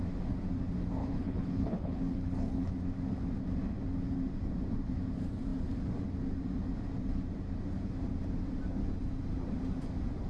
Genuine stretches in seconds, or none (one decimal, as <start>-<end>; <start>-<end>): 0.0-1.0; 2.7-10.3